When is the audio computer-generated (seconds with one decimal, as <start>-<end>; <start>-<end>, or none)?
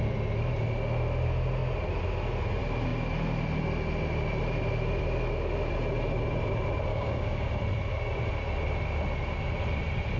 6.9-7.5